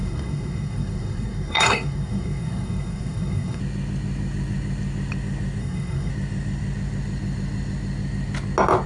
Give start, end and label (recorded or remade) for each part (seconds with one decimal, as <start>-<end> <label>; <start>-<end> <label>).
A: 0.0-3.6 remade; 3.6-5.6 recorded; 5.6-6.1 remade; 6.1-8.9 recorded